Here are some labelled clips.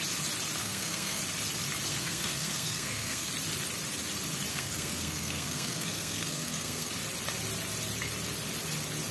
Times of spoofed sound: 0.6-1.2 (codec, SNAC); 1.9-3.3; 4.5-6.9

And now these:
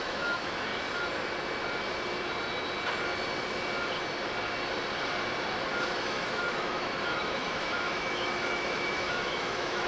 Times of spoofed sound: 0.0-0.7 (autoencoder, DAC-VAE); 5.8-9.9

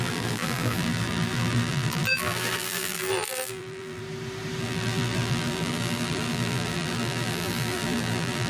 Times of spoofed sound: 0.0-4.0 (vocoder, BigVGAN v2); 4.6-8.5

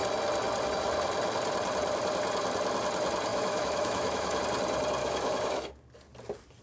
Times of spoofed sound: 3.3-4.4 (autoencoder, DAC-VAE); 5.0-5.7